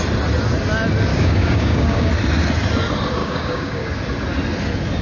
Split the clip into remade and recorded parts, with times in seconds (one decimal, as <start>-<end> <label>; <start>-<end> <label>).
0.0-1.1 recorded; 1.1-2.1 remade; 2.1-3.2 recorded; 3.2-3.9 remade; 3.9-5.0 recorded

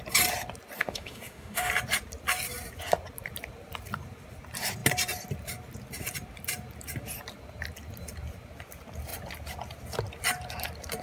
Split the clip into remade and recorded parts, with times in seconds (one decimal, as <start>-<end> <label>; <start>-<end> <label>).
0.0-0.8 recorded; 0.8-1.7 remade; 1.7-11.0 recorded

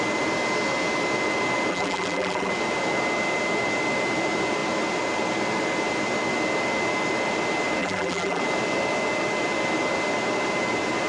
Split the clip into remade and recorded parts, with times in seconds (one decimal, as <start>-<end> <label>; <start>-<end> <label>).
0.0-1.7 recorded; 1.7-2.5 remade; 2.5-7.8 recorded; 7.8-8.4 remade; 8.4-11.1 recorded

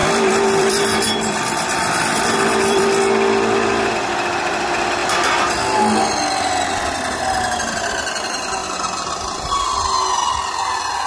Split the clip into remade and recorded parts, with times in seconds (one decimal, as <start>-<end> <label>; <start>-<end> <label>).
0.0-3.0 remade; 3.0-8.6 recorded; 8.6-9.6 remade; 9.6-11.1 recorded